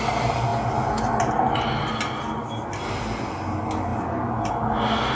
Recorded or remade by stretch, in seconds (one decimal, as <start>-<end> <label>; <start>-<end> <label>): 0.0-5.1 recorded